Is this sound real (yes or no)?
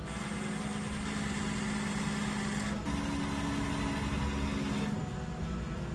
yes